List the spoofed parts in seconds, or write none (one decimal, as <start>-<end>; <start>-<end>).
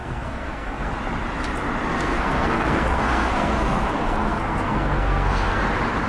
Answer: 0.0-0.9; 1.9-5.6